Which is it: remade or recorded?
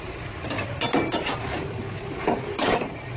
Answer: recorded